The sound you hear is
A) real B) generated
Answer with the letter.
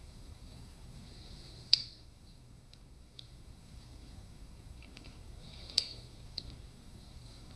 B